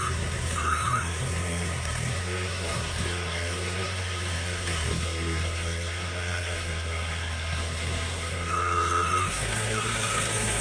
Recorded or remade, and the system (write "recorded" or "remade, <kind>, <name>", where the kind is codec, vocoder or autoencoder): remade, codec, SNAC